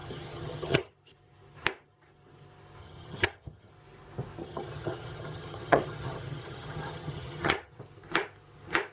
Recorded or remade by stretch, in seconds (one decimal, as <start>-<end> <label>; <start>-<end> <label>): 0.0-0.9 remade; 0.9-2.8 recorded; 2.8-3.7 remade; 3.7-4.4 recorded; 4.4-7.7 remade; 7.7-8.9 recorded